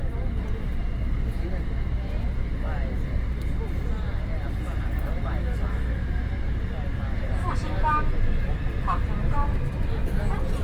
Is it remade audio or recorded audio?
recorded